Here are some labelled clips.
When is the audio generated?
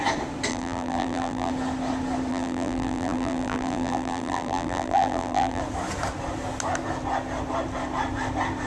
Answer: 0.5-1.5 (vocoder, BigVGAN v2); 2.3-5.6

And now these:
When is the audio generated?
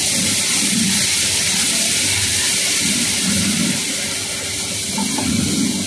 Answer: 2.3-5.5 (vocoder, BigVGAN v2)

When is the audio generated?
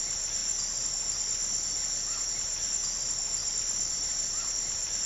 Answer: 3.4-5.1 (vocoder, BigVGAN v2)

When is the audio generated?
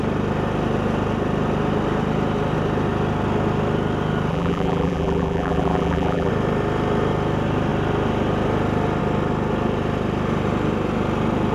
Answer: 4.3-6.3 (vocoder, BigVGAN v2)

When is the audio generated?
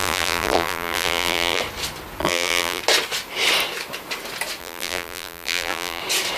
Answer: 0.0-1.6 (vocoder, BigVGAN v2); 2.2-2.8; 4.6-6.0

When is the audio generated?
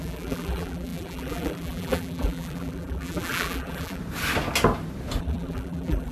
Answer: 0.0-4.0 (vocoder, BigVGAN v2); 5.2-6.1